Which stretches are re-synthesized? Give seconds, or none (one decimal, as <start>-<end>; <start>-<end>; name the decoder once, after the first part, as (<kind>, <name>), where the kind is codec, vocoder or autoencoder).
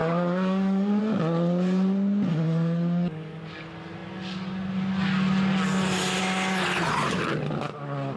0.0-1.0 (codec, DAC); 2.3-3.4